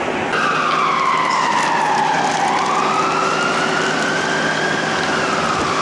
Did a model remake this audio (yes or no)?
no